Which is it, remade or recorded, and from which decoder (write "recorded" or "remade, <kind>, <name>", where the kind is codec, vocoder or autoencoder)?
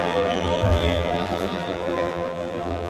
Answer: remade, vocoder, BigVGAN v2